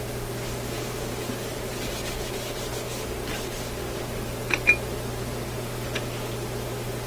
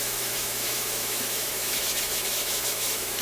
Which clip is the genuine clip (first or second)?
first